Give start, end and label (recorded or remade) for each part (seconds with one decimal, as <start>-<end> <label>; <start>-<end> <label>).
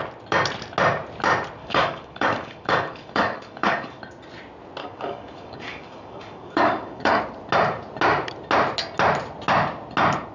0.0-1.6 recorded; 1.6-4.0 remade; 4.0-4.8 recorded; 4.8-7.2 remade; 7.2-10.3 recorded